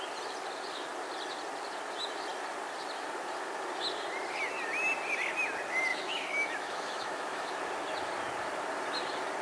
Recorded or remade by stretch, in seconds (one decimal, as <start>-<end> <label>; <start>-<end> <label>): 0.0-5.9 recorded; 5.9-7.6 remade; 7.6-9.4 recorded

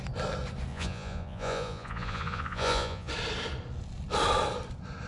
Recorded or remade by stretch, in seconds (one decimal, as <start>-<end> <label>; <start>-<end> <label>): 0.0-0.7 recorded; 0.7-3.1 remade; 3.1-5.1 recorded